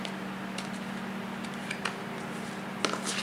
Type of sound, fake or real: real